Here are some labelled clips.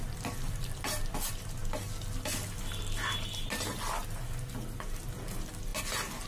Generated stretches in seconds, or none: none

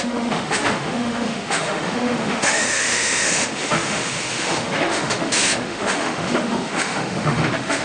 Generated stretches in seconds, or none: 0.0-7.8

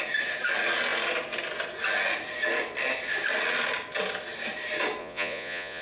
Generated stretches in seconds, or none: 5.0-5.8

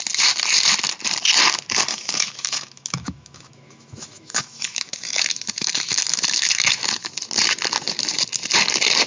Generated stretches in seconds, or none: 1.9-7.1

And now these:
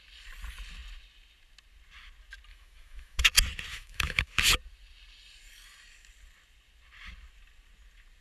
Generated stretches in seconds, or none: 2.5-3.2; 3.7-4.4

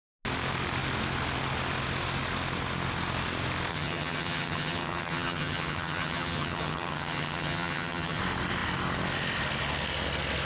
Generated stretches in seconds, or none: 3.7-8.2